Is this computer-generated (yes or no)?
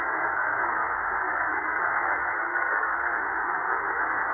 yes